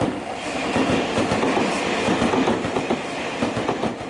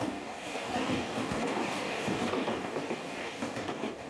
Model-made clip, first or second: second